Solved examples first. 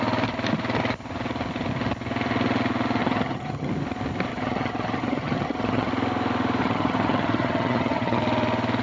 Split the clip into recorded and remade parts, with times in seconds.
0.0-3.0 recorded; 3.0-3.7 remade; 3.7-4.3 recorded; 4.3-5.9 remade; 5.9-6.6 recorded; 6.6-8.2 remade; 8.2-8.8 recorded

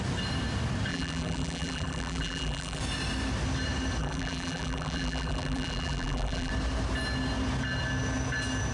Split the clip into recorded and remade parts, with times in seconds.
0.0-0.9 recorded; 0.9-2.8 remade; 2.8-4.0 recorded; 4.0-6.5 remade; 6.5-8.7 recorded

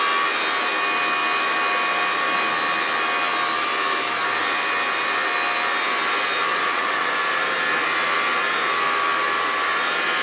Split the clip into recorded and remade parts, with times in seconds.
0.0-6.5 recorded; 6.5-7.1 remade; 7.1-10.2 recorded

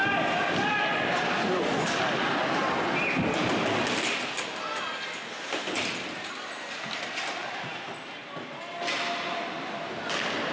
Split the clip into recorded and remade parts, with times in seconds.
0.0-10.5 recorded

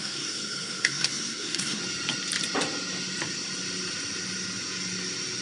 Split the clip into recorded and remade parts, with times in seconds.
0.0-1.8 remade; 1.8-5.4 recorded

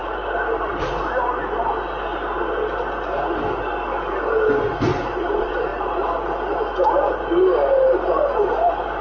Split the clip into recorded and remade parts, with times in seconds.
0.0-9.0 recorded